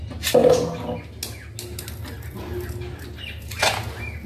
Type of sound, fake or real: real